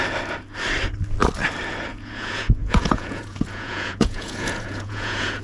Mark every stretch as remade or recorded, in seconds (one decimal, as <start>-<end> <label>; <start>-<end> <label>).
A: 0.0-1.9 recorded; 1.9-5.4 remade